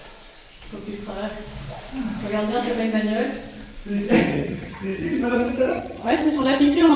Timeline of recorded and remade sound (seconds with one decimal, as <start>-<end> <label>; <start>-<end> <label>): 0.0-4.2 recorded; 4.2-7.0 remade